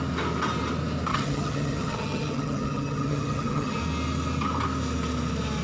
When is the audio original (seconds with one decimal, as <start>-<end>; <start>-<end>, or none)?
0.0-1.1; 3.8-5.6